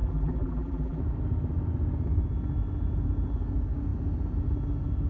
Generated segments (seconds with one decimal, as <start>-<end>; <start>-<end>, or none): 0.0-1.0